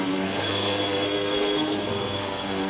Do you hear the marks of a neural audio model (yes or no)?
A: yes